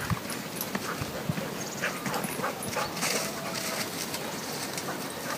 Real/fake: real